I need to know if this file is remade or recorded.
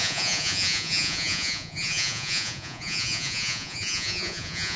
remade